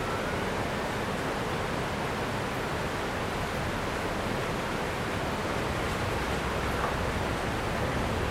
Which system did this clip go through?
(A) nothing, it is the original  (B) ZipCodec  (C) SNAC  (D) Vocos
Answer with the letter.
A